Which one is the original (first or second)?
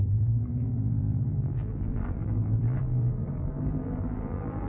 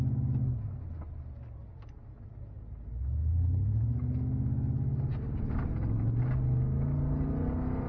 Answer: second